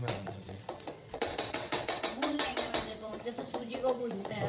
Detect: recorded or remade remade